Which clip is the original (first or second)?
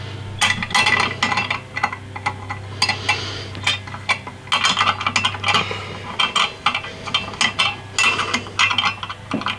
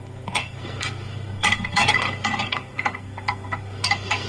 first